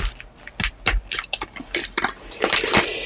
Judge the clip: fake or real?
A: real